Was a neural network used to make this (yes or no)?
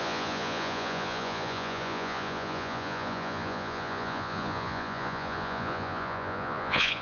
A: yes